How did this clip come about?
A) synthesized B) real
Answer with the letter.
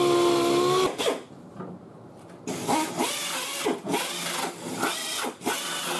B